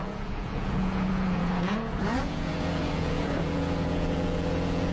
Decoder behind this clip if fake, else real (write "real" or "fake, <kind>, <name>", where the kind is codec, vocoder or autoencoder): fake, vocoder, Vocos